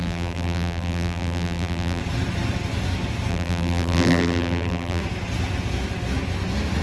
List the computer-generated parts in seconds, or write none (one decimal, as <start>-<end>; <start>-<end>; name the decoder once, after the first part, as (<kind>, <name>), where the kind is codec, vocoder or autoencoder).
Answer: 0.0-2.0 (vocoder, BigVGAN v2); 3.3-5.0